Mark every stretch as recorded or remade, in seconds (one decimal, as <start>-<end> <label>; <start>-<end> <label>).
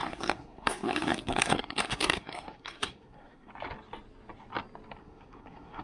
0.0-3.5 remade; 3.5-5.0 recorded; 5.0-5.8 remade